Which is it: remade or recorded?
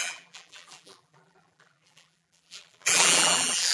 remade